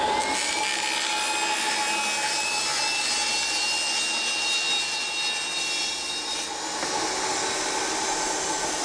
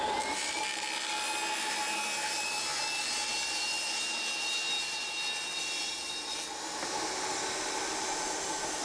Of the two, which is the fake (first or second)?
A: second